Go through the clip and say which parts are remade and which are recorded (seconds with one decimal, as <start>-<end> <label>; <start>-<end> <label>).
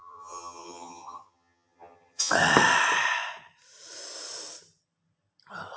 0.0-2.3 remade; 2.3-5.8 recorded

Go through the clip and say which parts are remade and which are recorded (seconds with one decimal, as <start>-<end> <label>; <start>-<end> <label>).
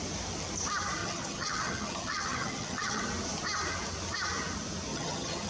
0.0-1.0 recorded; 1.0-3.0 remade; 3.0-4.9 recorded; 4.9-5.5 remade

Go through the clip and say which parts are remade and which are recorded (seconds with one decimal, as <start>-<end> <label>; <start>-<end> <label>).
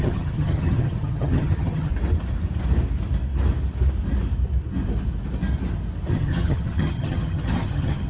0.0-1.9 remade; 1.9-6.1 recorded; 6.1-8.1 remade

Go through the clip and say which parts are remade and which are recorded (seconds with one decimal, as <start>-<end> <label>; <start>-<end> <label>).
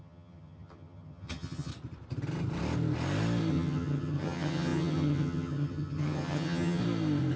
0.0-1.7 remade; 1.7-3.5 recorded; 3.5-6.8 remade; 6.8-7.4 recorded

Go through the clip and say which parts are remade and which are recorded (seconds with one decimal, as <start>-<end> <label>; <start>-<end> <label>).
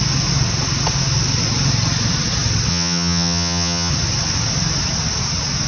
0.0-2.7 recorded; 2.7-3.9 remade; 3.9-5.7 recorded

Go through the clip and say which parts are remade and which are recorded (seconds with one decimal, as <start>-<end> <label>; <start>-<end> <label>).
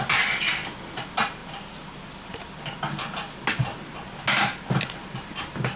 0.0-5.8 recorded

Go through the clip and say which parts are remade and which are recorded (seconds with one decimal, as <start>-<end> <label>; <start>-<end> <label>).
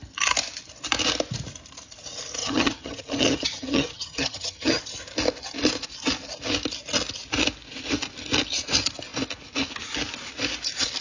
0.0-2.4 recorded; 2.4-4.8 remade; 4.8-11.0 recorded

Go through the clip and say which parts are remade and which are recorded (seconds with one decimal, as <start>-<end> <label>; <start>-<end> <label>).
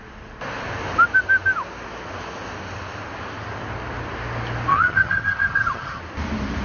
0.0-4.7 recorded; 4.7-6.0 remade; 6.0-6.6 recorded